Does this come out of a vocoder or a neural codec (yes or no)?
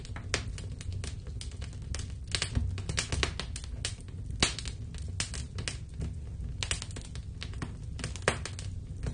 no